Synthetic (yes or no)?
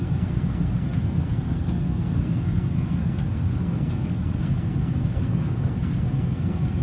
yes